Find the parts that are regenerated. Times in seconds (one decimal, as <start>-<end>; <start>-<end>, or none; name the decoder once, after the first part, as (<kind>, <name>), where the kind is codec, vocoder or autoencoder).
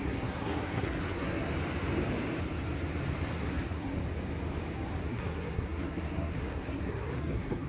0.0-1.5 (codec, SNAC); 3.3-4.0; 5.0-7.7